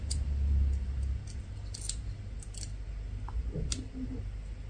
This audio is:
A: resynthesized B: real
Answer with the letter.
B